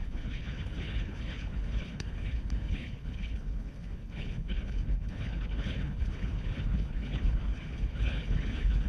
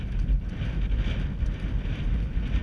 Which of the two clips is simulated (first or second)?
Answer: first